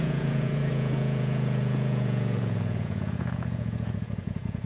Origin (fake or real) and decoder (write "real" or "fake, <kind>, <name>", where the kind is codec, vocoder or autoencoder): fake, vocoder, Vocos